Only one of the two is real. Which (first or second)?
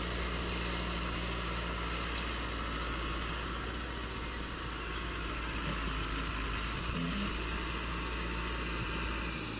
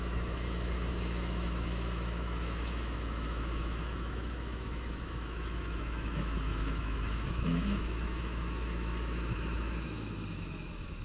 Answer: first